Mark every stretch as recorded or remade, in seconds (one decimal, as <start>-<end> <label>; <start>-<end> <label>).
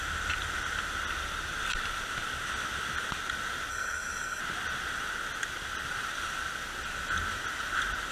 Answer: 0.0-3.7 recorded; 3.7-4.4 remade; 4.4-8.1 recorded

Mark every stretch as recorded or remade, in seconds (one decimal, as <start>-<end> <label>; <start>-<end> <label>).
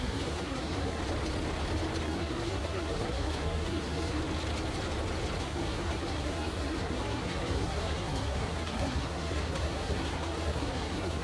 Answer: 0.0-1.0 remade; 1.0-2.0 recorded; 2.0-4.2 remade; 4.2-5.4 recorded; 5.4-11.2 remade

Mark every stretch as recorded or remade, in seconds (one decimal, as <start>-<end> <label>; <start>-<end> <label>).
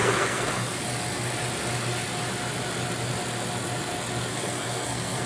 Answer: 0.0-0.8 remade; 0.8-4.3 recorded; 4.3-5.3 remade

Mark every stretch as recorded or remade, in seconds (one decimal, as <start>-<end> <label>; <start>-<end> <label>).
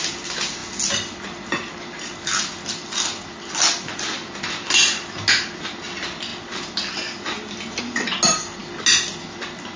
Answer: 0.0-9.8 recorded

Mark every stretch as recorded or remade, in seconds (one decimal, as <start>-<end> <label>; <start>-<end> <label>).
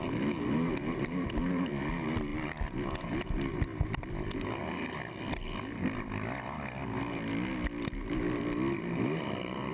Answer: 0.0-9.7 recorded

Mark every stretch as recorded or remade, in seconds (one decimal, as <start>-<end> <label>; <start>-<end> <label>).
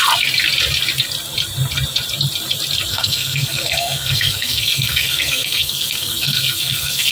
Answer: 0.0-2.9 recorded; 2.9-7.1 remade